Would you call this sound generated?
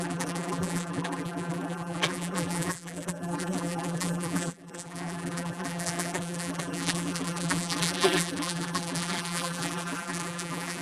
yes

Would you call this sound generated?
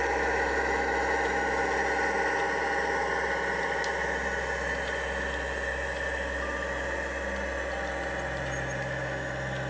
no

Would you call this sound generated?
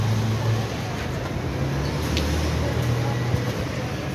no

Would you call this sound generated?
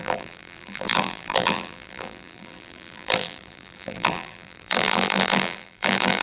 yes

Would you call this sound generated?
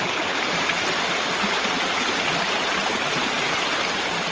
yes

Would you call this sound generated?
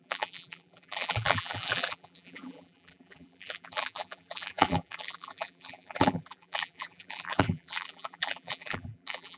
yes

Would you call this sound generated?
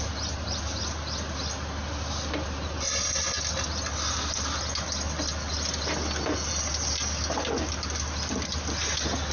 no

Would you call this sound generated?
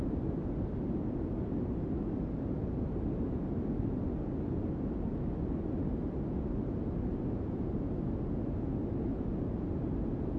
no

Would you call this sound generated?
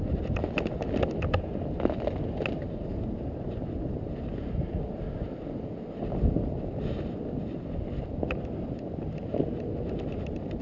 no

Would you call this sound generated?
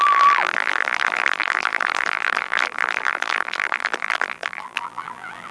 yes